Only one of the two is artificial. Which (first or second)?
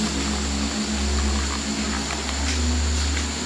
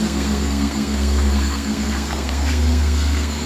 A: second